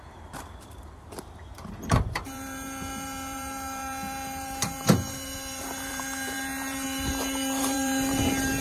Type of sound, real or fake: fake